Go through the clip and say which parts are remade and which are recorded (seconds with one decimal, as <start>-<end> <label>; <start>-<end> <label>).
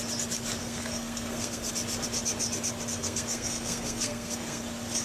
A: 0.0-0.6 recorded; 0.6-1.7 remade; 1.7-2.9 recorded; 2.9-4.6 remade; 4.6-5.0 recorded